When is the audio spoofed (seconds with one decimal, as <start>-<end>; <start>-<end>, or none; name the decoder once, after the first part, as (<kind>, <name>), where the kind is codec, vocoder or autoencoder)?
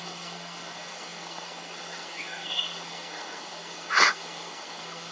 0.0-5.1 (codec, SNAC)